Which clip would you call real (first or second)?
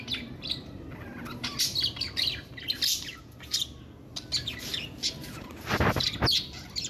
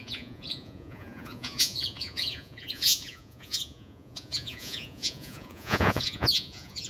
first